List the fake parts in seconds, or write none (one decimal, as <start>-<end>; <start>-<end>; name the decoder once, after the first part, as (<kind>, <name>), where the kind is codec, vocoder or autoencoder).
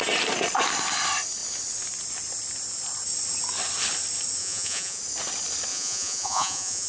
4.4-5.0 (vocoder, Vocos); 5.7-6.9